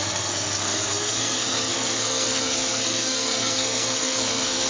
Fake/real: fake